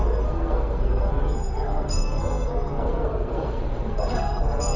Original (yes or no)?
no